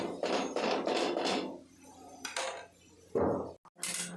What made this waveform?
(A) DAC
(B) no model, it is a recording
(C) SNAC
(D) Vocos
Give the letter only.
B